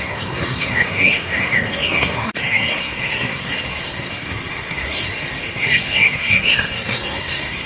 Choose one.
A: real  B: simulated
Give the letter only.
B